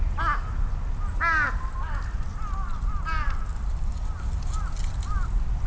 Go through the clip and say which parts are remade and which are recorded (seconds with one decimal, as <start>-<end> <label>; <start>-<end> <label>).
0.0-5.7 recorded

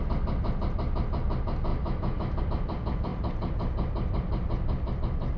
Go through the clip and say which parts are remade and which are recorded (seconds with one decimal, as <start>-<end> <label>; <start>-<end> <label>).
0.0-1.7 recorded; 1.7-2.4 remade; 2.4-5.4 recorded

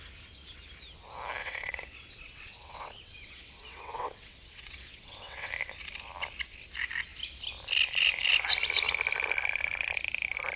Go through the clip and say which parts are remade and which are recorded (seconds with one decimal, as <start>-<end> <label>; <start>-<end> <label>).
0.0-1.4 recorded; 1.4-5.5 remade; 5.5-10.6 recorded

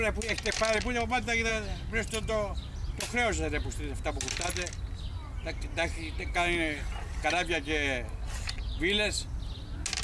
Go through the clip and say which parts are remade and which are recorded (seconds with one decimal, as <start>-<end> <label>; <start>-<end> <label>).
0.0-10.0 recorded

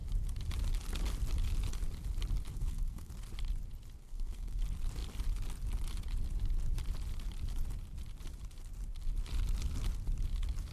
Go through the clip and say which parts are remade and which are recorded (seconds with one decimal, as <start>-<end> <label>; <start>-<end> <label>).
0.0-2.5 recorded; 2.5-3.1 remade; 3.1-4.0 recorded; 4.0-4.6 remade; 4.6-10.7 recorded